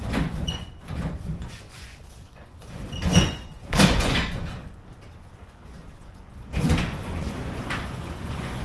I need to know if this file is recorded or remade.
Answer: remade